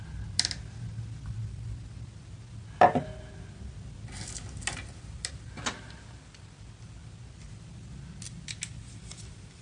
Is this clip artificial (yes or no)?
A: no